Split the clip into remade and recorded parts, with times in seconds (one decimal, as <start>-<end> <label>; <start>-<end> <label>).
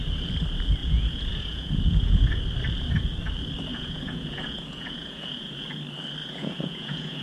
0.0-0.8 recorded; 0.8-2.4 remade; 2.4-3.7 recorded; 3.7-5.7 remade; 5.7-6.2 recorded; 6.2-7.2 remade